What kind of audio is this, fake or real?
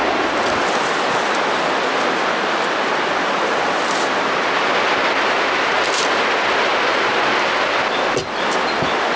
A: real